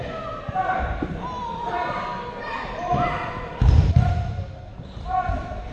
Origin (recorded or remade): recorded